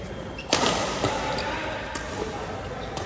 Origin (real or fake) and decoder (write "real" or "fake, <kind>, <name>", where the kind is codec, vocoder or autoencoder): real